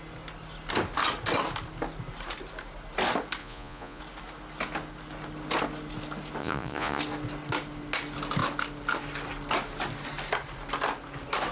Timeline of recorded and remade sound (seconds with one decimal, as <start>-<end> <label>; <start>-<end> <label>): 0.0-3.4 recorded; 3.4-4.0 remade; 4.0-6.4 recorded; 6.4-7.0 remade; 7.0-11.5 recorded